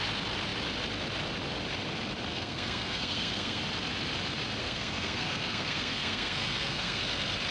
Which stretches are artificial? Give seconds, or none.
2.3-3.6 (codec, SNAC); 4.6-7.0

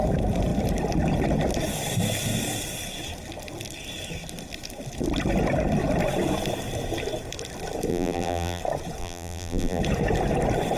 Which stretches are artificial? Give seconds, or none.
7.9-8.6 (vocoder, BigVGAN v2); 9.0-9.8

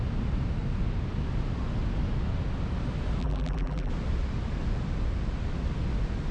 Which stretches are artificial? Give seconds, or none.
3.2-3.9 (vocoder, BigVGAN v2)

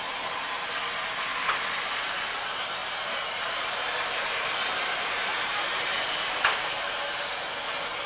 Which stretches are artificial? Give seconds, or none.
1.3-2.4 (vocoder, BigVGAN v2); 2.8-7.5

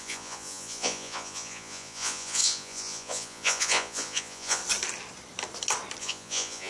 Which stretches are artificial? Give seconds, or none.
0.0-4.6 (vocoder, Vocos); 6.0-6.7